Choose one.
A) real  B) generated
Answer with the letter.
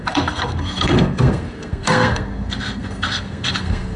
B